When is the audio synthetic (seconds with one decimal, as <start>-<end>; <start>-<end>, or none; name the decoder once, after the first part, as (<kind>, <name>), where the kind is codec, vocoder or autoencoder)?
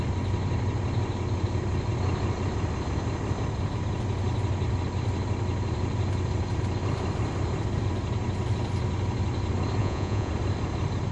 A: 9.8-10.3 (vocoder, Vocos)